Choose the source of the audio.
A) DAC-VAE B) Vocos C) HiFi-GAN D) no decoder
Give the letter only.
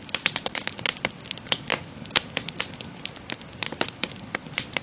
D